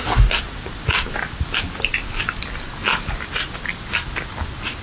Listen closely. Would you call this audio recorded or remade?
recorded